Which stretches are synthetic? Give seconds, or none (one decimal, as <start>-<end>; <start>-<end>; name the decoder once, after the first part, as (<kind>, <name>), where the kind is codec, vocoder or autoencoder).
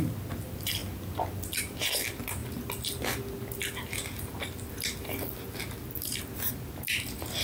none